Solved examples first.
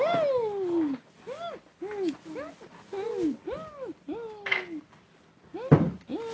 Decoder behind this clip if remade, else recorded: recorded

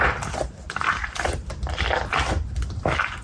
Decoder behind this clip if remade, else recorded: recorded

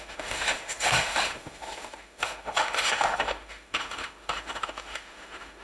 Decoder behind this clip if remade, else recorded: remade, autoencoder, DAC-VAE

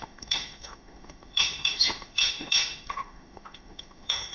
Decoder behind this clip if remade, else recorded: remade, autoencoder, DAC-VAE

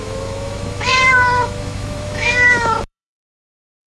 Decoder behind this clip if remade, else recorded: remade, autoencoder, DAC-VAE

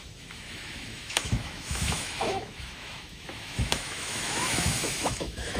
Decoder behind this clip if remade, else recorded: remade, autoencoder, DAC-VAE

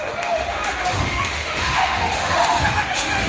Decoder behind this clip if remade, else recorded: remade, autoencoder, DAC-VAE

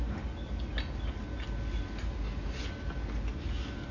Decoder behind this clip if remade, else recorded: recorded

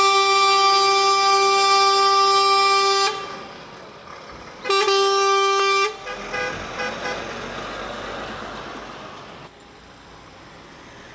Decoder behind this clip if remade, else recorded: recorded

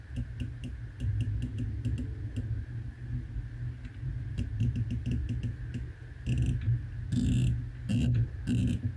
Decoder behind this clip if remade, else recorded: recorded